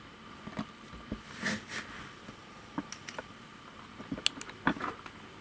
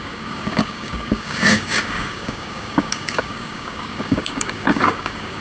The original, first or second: first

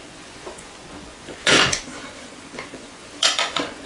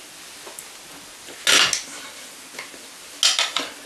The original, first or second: second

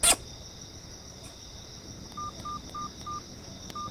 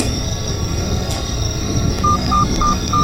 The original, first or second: first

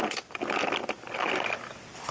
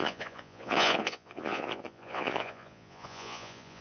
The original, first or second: first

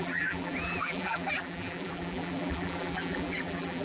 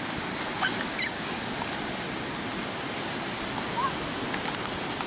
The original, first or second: second